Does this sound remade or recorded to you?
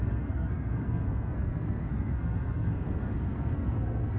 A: remade